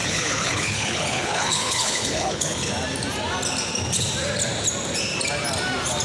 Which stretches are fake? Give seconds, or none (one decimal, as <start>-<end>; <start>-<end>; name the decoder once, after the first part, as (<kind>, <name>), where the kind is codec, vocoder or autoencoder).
0.0-2.7 (codec, HILCodec)